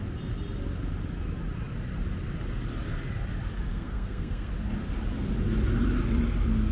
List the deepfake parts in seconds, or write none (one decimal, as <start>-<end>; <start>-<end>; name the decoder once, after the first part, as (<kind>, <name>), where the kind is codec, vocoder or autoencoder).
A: 3.7-4.5 (codec, SNAC)